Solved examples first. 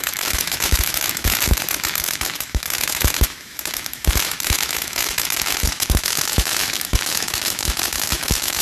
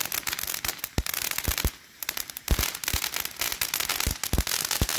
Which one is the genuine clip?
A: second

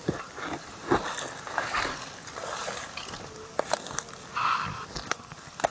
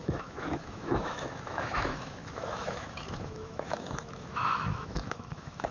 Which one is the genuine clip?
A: first